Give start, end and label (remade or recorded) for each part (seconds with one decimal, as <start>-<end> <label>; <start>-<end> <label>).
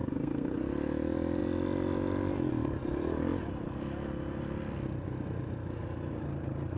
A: 0.0-0.6 remade; 0.6-6.8 recorded